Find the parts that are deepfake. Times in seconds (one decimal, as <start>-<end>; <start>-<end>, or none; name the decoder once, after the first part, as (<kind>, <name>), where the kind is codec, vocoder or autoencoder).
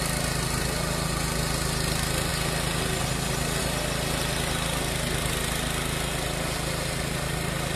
none